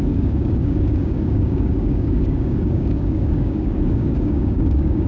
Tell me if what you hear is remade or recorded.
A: remade